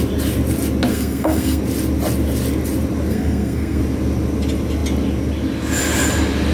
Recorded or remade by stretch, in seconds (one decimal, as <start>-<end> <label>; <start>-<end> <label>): 0.0-0.9 recorded; 0.9-1.6 remade; 1.6-3.1 recorded; 3.1-3.8 remade; 3.8-6.5 recorded